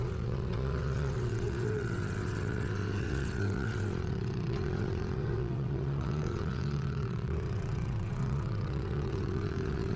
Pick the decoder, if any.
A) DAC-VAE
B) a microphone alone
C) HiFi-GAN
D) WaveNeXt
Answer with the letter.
D